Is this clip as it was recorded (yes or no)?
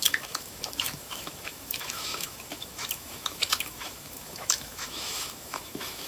no